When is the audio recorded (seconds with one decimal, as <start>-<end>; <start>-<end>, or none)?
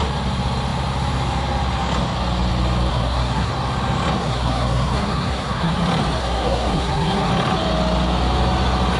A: 0.0-2.9; 3.5-4.2; 5.7-6.2; 7.3-9.0